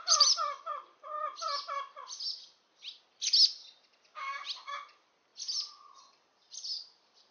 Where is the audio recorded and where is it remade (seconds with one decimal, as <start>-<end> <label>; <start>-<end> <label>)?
0.0-0.7 remade; 0.7-4.2 recorded; 4.2-5.3 remade; 5.3-6.0 recorded; 6.0-7.3 remade